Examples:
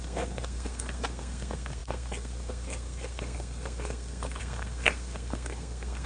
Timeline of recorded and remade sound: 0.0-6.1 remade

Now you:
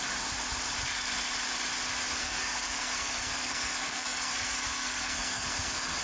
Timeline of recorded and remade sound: 0.0-2.2 recorded; 2.2-6.0 remade

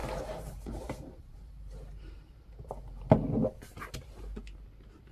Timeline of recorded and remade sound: 0.0-3.1 remade; 3.1-5.1 recorded

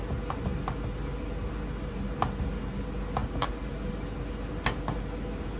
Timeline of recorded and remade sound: 0.0-5.6 recorded

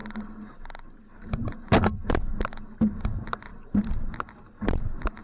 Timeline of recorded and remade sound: 0.0-5.2 recorded

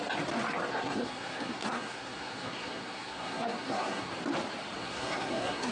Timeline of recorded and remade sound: 0.0-0.7 recorded; 0.7-4.1 remade; 4.1-4.8 recorded; 4.8-5.7 remade